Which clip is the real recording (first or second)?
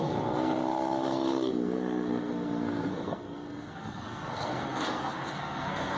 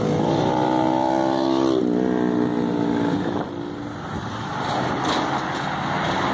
second